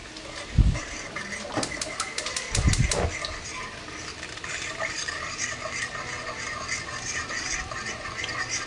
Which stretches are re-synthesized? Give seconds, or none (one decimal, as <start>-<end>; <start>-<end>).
none

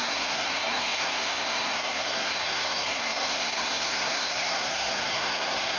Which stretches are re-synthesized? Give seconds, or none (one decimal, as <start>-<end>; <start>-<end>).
0.0-5.8

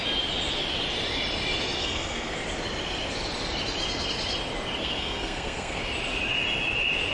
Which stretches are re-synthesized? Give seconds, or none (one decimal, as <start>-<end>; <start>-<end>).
1.8-2.4; 4.8-5.8

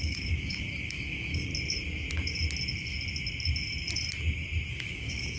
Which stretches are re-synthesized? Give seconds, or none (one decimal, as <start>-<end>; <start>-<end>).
0.0-1.5; 4.7-5.4

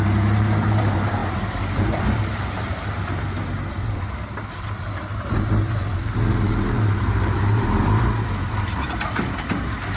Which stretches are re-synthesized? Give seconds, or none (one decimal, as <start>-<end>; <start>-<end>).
0.0-10.0

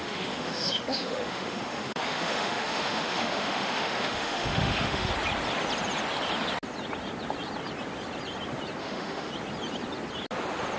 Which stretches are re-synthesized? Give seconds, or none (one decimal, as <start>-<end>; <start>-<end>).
0.0-5.1; 8.8-9.3